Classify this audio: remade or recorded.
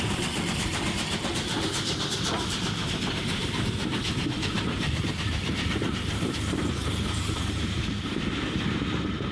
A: remade